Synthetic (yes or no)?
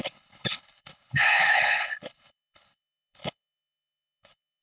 yes